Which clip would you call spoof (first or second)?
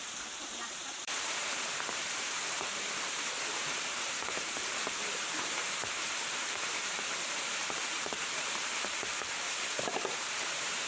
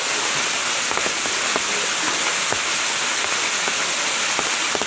first